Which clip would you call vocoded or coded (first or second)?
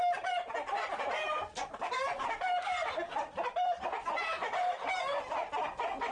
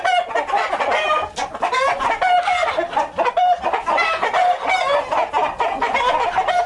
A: first